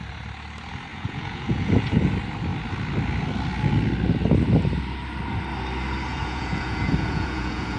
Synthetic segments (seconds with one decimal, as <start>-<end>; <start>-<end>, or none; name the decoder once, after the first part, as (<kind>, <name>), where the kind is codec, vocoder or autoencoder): 0.9-2.1 (vocoder, Vocos); 6.1-7.8

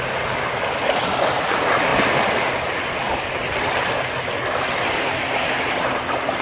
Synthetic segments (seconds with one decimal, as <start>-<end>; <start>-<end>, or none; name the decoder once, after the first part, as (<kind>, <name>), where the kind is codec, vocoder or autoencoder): none

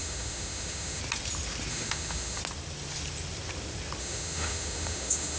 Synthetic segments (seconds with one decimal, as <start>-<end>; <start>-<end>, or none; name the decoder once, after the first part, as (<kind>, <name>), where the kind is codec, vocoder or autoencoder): 0.0-1.0 (autoencoder, DAC-VAE); 1.7-2.4; 4.0-5.4